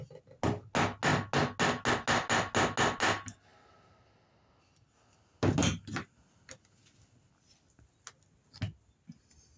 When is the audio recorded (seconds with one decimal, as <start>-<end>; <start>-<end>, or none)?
0.0-9.6